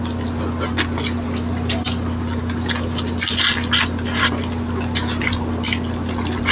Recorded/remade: recorded